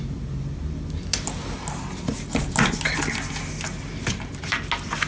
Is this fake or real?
real